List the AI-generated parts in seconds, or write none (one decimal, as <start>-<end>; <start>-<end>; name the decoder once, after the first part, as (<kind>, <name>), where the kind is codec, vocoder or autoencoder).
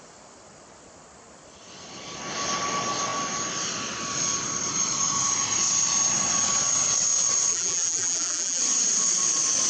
7.5-8.6 (vocoder, BigVGAN v2)